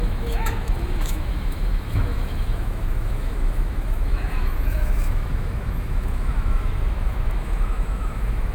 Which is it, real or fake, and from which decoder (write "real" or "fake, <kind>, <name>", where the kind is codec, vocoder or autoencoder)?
fake, autoencoder, DAC-VAE